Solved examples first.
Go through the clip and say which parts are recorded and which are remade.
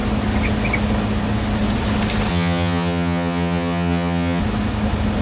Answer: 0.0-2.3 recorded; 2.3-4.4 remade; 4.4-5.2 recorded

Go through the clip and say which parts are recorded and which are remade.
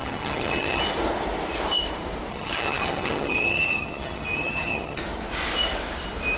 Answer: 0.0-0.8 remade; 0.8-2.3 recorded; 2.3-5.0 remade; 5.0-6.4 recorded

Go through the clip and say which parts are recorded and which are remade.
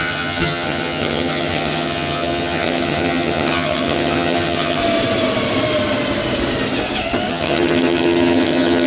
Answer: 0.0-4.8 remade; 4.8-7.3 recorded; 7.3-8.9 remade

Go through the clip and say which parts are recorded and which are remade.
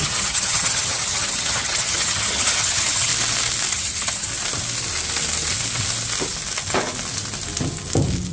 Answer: 0.0-3.1 remade; 3.1-3.7 recorded; 3.7-4.3 remade; 4.3-8.3 recorded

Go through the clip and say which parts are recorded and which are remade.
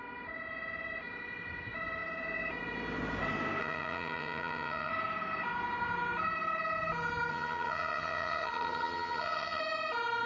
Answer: 0.0-3.6 recorded; 3.6-4.9 remade; 4.9-7.3 recorded; 7.3-9.6 remade; 9.6-10.3 recorded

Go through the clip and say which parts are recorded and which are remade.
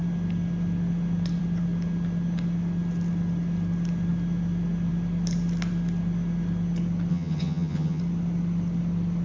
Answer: 0.0-7.1 recorded; 7.1-8.0 remade; 8.0-9.2 recorded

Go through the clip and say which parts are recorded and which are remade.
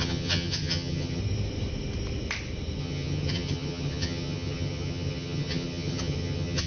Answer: 0.0-1.2 remade; 1.2-2.8 recorded; 2.8-6.7 remade